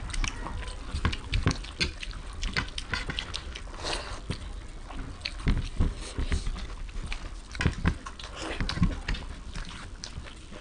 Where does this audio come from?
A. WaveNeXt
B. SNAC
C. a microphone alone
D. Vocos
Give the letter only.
C